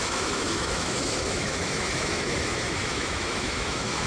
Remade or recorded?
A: remade